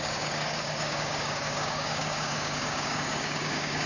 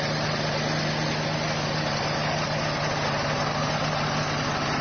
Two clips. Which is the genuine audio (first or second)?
second